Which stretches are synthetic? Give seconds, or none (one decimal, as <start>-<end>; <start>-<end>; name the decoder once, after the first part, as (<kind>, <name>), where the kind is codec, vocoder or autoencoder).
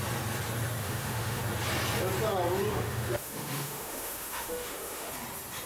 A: 0.8-1.4 (autoencoder, DAC-VAE); 2.7-5.1